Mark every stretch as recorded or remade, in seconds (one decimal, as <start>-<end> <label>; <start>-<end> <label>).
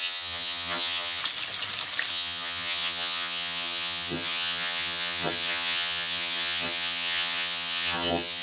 0.0-1.2 remade; 1.2-2.1 recorded; 2.1-8.4 remade